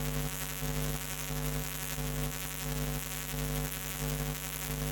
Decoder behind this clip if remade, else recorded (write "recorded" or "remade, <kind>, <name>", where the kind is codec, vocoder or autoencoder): remade, autoencoder, DAC-VAE